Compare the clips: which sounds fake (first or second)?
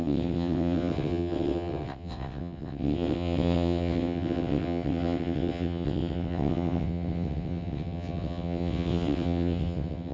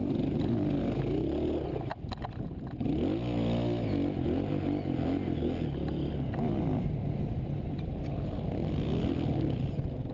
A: first